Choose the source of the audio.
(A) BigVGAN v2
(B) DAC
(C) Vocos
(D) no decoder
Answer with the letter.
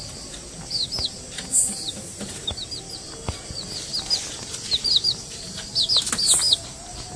D